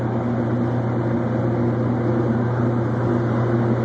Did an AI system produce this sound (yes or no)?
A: no